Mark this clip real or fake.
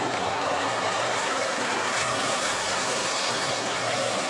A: fake